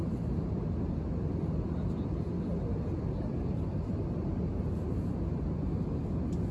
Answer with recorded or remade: recorded